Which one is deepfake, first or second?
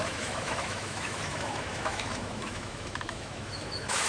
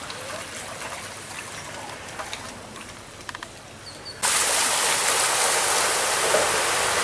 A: first